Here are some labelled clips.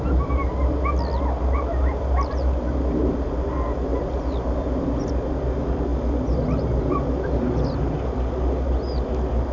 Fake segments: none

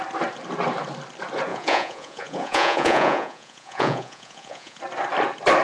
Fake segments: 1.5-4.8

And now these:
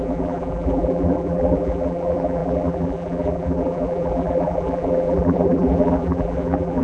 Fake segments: 0.0-6.8

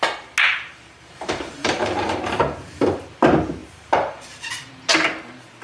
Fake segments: 0.5-3.0; 3.6-4.7

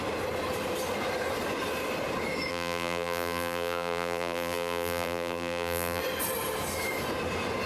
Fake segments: 2.5-6.0